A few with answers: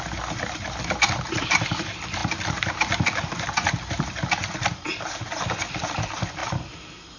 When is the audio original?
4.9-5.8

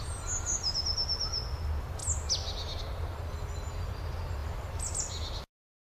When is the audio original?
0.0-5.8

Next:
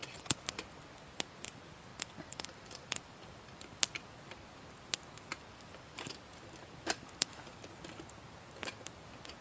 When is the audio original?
0.0-1.9; 3.8-5.3; 6.1-6.6; 7.4-9.4